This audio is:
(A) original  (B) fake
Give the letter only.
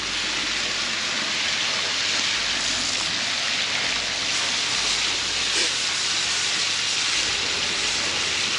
A